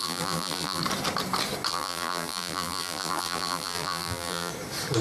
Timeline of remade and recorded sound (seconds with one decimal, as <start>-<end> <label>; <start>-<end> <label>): 0.0-0.8 remade; 0.8-1.7 recorded; 1.7-4.5 remade; 4.5-5.0 recorded